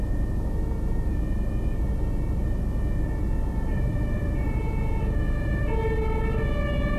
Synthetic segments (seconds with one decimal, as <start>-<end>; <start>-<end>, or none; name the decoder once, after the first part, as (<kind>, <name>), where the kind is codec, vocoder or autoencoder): 3.7-6.4 (vocoder, BigVGAN v2)

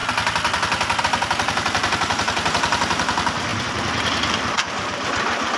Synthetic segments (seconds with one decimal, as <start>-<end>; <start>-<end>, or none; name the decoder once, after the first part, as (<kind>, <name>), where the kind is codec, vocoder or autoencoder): 1.0-5.6 (vocoder, BigVGAN v2)